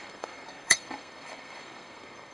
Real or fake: fake